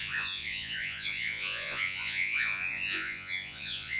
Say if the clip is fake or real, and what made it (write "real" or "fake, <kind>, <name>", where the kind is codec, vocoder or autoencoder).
fake, vocoder, Vocos